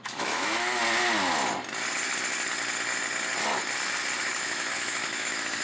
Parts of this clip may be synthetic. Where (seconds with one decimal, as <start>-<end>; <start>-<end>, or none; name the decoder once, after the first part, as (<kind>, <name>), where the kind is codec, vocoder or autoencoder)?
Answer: 0.0-0.8 (autoencoder, DAC-VAE); 4.2-5.6